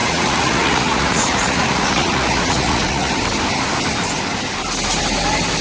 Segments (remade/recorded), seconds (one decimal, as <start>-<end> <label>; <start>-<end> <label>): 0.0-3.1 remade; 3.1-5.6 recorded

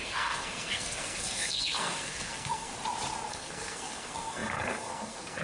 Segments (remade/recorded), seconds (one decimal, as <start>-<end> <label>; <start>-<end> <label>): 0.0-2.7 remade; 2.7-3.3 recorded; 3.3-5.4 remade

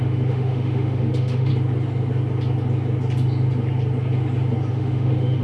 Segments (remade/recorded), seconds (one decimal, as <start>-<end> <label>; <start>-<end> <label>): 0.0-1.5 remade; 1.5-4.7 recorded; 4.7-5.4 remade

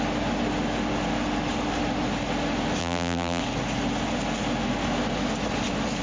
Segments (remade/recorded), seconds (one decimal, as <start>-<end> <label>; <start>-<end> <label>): 0.0-2.8 recorded; 2.8-3.4 remade; 3.4-6.0 recorded

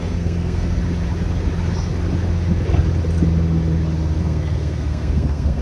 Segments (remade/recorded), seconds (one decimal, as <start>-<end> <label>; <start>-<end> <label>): 0.0-0.8 remade; 0.8-4.2 recorded; 4.2-5.6 remade

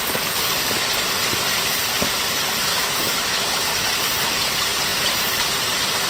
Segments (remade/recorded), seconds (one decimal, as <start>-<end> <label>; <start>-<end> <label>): 0.0-2.7 recorded; 2.7-3.7 remade; 3.7-6.1 recorded

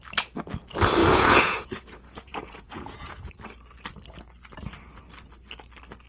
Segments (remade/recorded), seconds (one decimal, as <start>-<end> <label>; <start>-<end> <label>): 0.0-1.0 recorded; 1.0-3.3 remade; 3.3-6.1 recorded

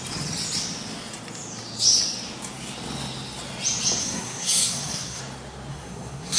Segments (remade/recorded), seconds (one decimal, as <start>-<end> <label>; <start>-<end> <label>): 0.0-4.0 recorded; 4.0-5.2 remade; 5.2-5.7 recorded; 5.7-6.4 remade